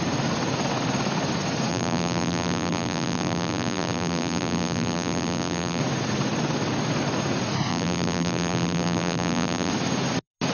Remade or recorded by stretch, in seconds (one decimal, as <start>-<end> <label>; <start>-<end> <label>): 0.0-1.7 recorded; 1.7-5.8 remade; 5.8-7.7 recorded; 7.7-9.7 remade; 9.7-10.5 recorded